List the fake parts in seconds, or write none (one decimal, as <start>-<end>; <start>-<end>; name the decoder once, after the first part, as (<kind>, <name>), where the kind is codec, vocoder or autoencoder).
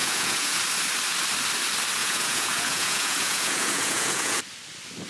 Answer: 0.0-0.6 (vocoder, Vocos); 2.0-4.4